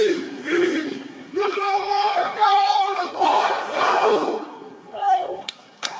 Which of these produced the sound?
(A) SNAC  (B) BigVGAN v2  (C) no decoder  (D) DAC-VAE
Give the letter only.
A